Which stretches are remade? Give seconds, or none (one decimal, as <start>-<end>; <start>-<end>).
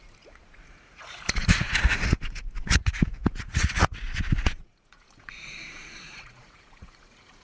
0.0-7.4